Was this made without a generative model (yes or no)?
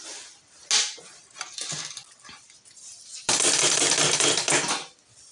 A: yes